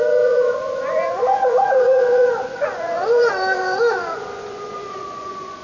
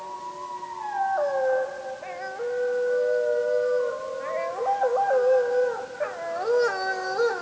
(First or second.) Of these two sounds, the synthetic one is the first